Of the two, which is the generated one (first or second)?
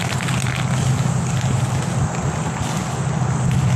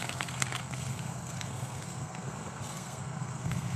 second